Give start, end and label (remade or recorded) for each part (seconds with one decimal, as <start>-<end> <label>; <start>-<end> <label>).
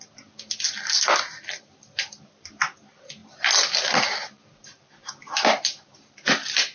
0.0-6.7 recorded